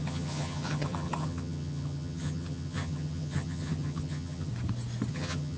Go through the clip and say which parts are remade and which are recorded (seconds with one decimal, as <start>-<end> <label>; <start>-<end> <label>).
0.0-4.5 remade; 4.5-5.1 recorded; 5.1-5.6 remade